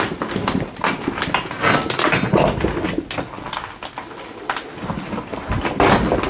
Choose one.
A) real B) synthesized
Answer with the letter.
A